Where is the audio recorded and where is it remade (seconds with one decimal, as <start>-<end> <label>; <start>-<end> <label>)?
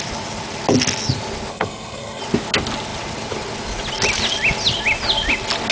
0.0-1.5 recorded; 1.5-2.2 remade; 2.2-5.7 recorded